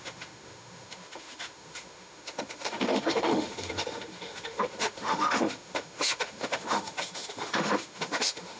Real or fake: fake